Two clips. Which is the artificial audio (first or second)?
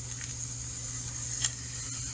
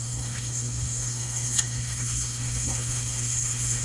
second